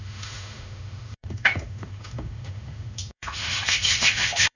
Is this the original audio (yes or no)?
no